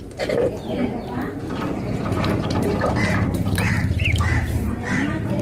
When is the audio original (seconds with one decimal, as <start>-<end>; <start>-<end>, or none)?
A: 0.0-0.8; 4.0-5.4